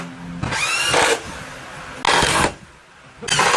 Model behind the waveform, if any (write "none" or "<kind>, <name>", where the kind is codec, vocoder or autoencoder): none